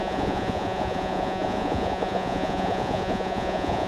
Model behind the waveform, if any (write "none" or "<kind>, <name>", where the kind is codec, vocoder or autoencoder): vocoder, Vocos